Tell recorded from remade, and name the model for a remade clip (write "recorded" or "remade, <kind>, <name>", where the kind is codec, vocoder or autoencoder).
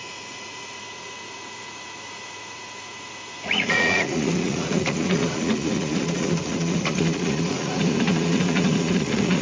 remade, vocoder, Vocos